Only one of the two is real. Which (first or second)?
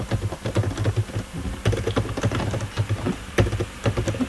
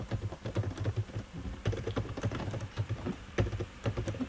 first